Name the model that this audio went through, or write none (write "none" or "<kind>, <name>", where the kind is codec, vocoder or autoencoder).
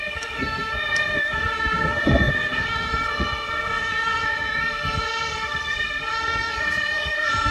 codec, SNAC